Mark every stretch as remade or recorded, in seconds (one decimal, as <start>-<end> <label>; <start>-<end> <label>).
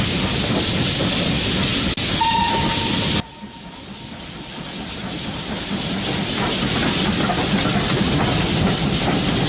0.0-9.5 recorded